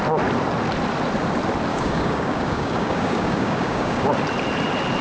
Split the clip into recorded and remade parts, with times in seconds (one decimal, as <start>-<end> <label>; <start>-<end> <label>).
0.0-1.7 recorded; 1.7-4.1 remade; 4.1-5.0 recorded